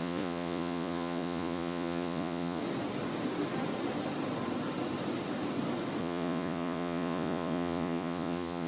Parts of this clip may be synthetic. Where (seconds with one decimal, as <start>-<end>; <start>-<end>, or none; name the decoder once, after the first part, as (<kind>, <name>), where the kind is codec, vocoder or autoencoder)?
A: 0.0-2.6 (vocoder, Vocos); 6.0-8.7